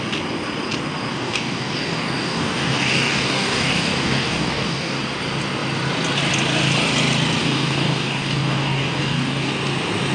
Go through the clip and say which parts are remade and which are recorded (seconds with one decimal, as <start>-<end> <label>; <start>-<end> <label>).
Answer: 0.0-1.1 recorded; 1.1-5.0 remade; 5.0-7.4 recorded; 7.4-9.5 remade; 9.5-10.1 recorded